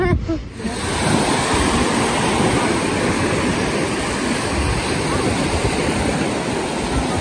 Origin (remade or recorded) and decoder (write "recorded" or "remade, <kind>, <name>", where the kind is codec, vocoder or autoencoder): recorded